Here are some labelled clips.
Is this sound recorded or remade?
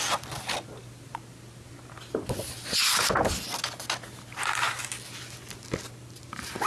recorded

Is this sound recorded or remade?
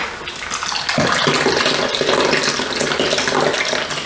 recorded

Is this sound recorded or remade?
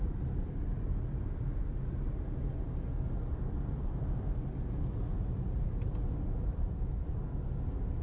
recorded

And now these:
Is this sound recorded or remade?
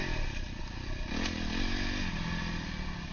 recorded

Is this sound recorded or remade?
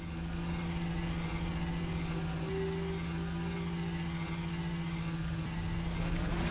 recorded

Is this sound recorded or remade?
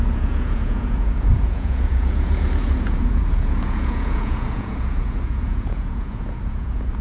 remade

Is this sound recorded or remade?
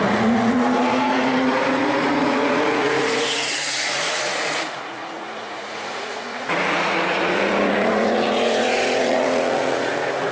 remade